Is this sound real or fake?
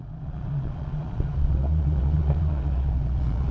fake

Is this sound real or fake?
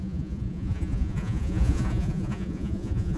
fake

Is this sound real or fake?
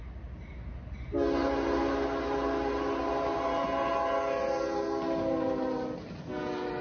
real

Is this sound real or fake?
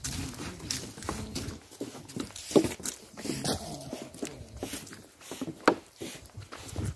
real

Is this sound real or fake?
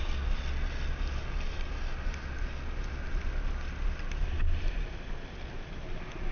real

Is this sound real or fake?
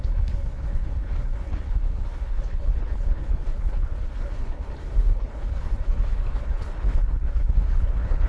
fake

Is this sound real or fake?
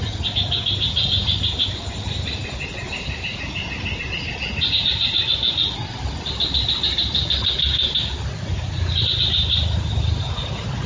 real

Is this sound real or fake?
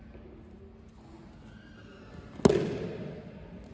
real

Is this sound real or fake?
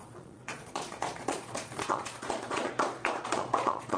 fake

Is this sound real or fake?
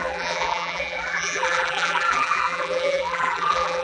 fake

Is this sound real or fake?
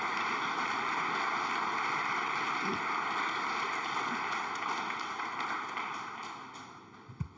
real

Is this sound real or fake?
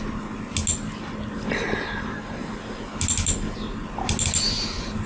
real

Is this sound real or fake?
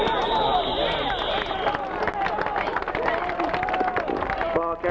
real